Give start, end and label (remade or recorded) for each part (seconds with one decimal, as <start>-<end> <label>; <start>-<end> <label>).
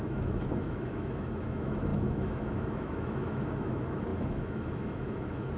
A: 0.0-5.6 remade